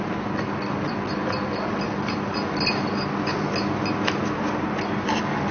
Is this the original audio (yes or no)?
yes